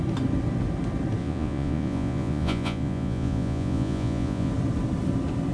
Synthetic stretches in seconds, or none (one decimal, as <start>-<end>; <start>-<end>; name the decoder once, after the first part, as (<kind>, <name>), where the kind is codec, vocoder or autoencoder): 1.2-4.5 (vocoder, Vocos)